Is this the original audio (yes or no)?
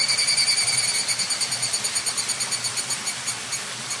yes